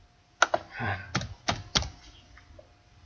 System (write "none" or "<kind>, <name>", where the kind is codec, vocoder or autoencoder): none